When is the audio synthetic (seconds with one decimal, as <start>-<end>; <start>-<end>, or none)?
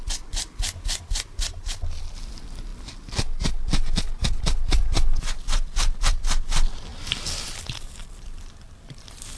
none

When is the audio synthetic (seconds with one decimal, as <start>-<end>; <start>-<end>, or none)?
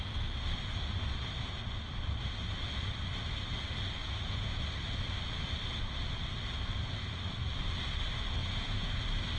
4.0-4.6; 8.4-9.0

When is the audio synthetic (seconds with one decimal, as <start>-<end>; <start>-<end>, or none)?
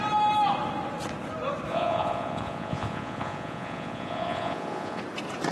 1.7-5.0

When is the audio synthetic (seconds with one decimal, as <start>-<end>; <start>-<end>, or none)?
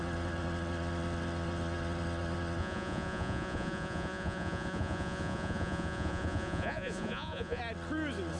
2.6-7.6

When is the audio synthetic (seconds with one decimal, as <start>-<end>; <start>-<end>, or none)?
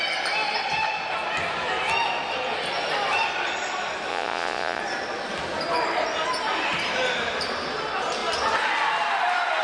4.1-4.8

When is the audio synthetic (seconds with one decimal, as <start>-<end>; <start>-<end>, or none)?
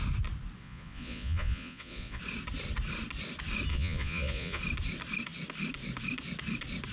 0.6-2.2; 3.7-4.6